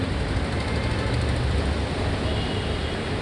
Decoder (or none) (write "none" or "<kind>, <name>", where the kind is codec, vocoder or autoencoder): none